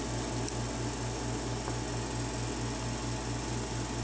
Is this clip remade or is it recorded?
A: recorded